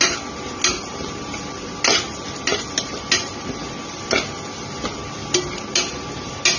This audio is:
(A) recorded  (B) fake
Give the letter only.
A